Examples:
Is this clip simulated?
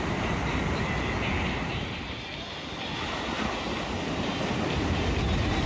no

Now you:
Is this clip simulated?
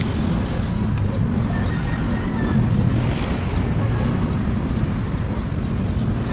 no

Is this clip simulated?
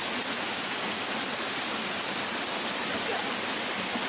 no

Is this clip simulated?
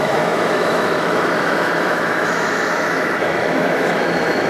yes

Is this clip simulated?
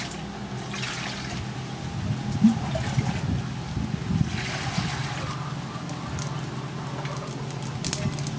no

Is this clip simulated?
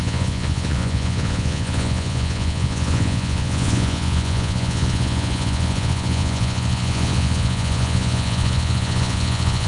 yes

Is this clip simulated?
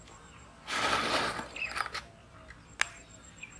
no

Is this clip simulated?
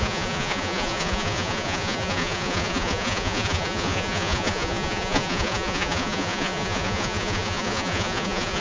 yes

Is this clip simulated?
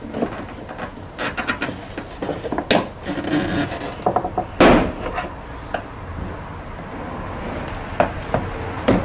no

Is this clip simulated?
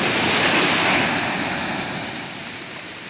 no